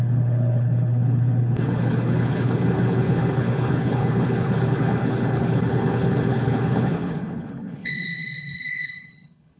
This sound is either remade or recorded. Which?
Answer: remade